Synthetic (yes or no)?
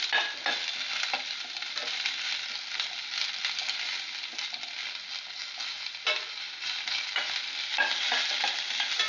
no